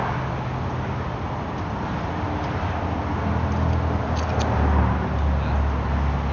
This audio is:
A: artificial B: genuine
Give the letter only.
B